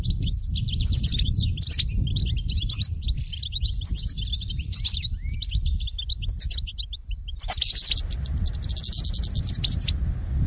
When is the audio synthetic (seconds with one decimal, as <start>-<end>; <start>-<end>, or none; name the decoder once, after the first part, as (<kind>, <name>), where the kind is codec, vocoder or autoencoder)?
0.0-0.4 (vocoder, BigVGAN v2); 1.0-5.4; 9.5-10.5

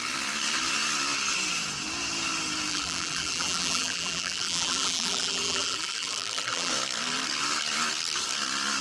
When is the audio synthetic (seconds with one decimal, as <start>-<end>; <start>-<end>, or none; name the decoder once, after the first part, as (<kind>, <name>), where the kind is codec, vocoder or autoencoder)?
2.7-6.7 (vocoder, BigVGAN v2)

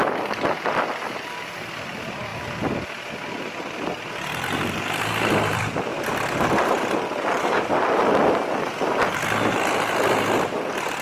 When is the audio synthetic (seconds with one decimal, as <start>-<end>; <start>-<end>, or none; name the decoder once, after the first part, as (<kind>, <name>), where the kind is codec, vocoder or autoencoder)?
0.0-2.3 (vocoder, BigVGAN v2); 3.5-5.9; 7.4-11.0

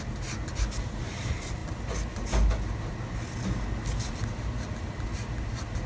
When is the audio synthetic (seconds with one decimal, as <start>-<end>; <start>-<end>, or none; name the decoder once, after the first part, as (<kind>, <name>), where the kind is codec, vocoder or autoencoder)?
none

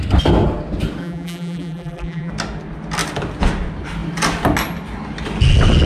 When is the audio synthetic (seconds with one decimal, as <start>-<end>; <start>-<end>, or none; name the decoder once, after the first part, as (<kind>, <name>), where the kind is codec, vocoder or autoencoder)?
1.0-2.3 (vocoder, BigVGAN v2)